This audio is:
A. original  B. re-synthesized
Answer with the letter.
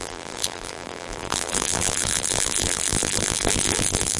B